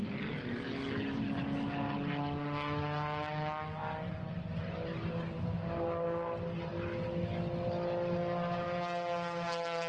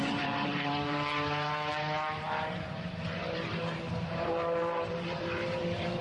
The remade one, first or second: second